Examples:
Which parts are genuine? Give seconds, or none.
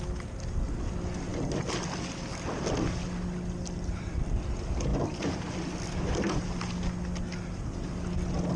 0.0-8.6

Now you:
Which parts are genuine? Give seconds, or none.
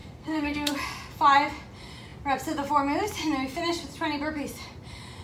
0.7-5.2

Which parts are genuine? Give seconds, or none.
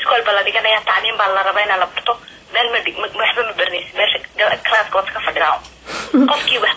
0.0-6.8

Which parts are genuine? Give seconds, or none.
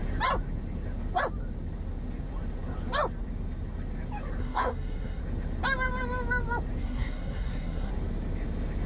0.0-4.4; 5.2-6.8; 7.9-8.9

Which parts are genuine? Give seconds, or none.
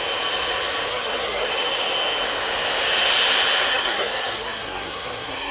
0.0-0.9; 1.5-3.7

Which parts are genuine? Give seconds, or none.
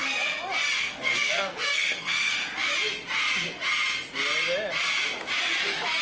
0.0-0.8; 2.4-6.0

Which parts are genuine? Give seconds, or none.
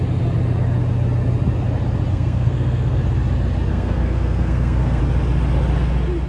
0.0-2.1; 3.0-3.7; 5.0-6.3